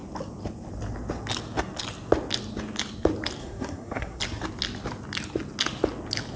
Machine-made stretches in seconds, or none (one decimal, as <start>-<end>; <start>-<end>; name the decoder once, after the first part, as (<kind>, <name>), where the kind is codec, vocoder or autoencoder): 3.4-4.2 (codec, SNAC)